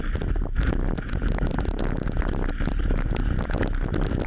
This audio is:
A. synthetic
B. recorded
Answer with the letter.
B